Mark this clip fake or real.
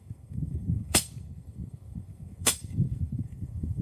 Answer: fake